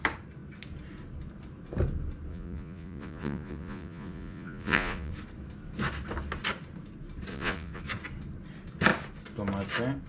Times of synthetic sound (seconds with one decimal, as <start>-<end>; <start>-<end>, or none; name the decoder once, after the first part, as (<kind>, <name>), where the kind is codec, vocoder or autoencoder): 2.3-5.1 (vocoder, Vocos); 7.3-7.8

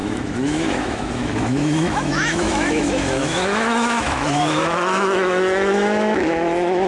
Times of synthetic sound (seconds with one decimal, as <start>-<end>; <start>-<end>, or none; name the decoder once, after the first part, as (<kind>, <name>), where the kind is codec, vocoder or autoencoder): 0.0-6.9 (autoencoder, DAC-VAE)

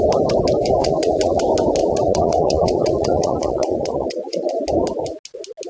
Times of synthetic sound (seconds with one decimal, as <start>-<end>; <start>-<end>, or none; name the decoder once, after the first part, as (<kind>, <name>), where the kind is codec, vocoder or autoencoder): 0.8-1.4 (vocoder, Vocos); 1.8-4.5

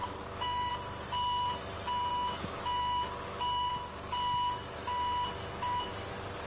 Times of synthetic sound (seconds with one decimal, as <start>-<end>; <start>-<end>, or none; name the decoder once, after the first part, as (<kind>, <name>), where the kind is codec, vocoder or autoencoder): 0.0-0.7 (autoencoder, DAC-VAE); 2.1-3.7

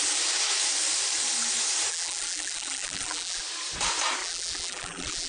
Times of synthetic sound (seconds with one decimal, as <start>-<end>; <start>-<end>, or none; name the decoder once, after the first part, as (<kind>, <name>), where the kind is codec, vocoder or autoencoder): 1.9-3.4 (vocoder, BigVGAN v2); 4.2-5.3

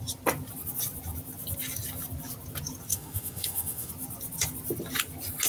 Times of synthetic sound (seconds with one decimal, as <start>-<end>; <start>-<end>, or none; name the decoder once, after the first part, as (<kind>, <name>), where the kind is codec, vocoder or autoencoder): 2.9-3.9 (autoencoder, DAC-VAE)

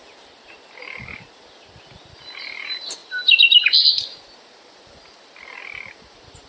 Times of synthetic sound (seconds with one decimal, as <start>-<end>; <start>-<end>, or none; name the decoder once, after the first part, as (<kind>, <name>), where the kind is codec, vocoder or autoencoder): none